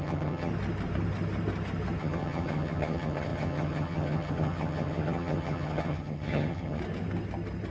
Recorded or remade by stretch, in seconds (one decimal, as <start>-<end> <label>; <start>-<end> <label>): 0.0-0.5 remade; 0.5-2.0 recorded; 2.0-6.8 remade; 6.8-7.7 recorded